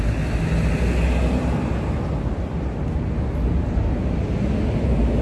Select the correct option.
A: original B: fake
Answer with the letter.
A